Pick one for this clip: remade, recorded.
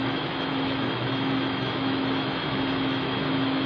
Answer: remade